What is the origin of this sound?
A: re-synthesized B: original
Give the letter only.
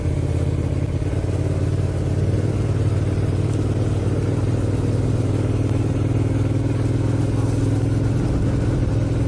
B